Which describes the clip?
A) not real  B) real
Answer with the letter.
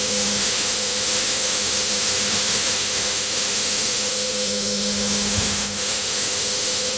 A